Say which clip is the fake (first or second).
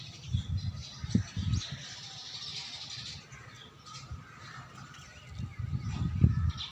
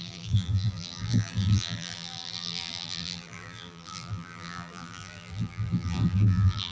second